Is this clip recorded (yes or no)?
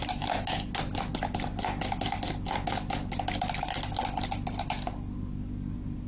yes